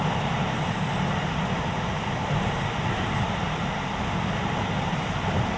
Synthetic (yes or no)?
yes